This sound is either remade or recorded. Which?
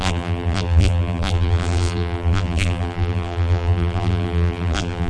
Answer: remade